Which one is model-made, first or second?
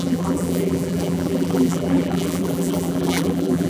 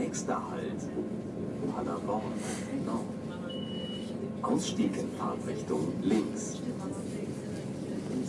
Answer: first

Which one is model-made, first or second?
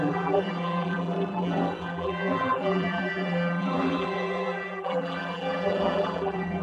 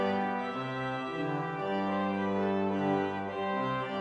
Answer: first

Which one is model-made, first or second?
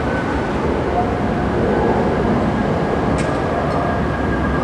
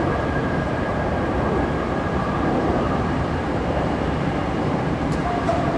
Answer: second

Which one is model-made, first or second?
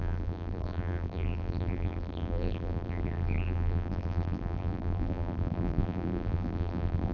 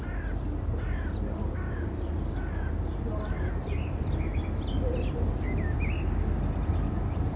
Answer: first